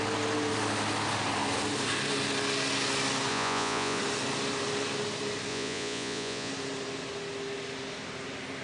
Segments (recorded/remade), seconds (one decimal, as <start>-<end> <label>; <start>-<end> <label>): 0.0-3.3 recorded; 3.3-4.0 remade; 4.0-5.5 recorded; 5.5-6.5 remade; 6.5-8.6 recorded